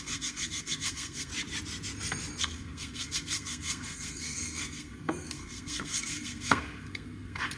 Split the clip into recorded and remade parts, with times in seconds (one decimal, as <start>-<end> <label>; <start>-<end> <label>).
0.0-1.3 remade; 1.3-2.4 recorded; 2.4-7.6 remade